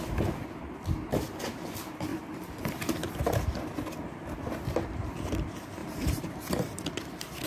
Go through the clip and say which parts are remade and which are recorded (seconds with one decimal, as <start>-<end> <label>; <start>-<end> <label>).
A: 0.0-2.1 recorded; 2.1-2.6 remade; 2.6-5.8 recorded; 5.8-6.8 remade; 6.8-7.5 recorded